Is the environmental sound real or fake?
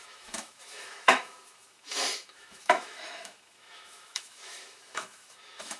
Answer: fake